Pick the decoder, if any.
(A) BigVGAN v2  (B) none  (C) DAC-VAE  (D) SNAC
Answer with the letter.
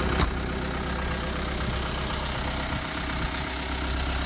B